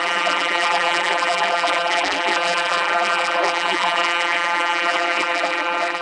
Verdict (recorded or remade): remade